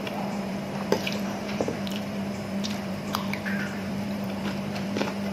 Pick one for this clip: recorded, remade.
remade